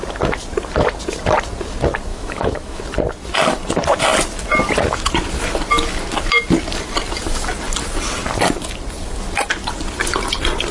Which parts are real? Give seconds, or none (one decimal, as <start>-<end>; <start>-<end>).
0.0-2.1; 2.8-10.7